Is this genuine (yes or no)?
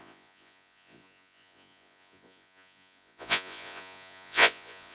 no